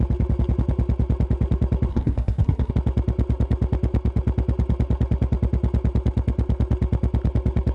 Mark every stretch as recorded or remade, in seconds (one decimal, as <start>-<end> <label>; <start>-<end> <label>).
0.0-1.9 recorded; 1.9-2.7 remade; 2.7-7.7 recorded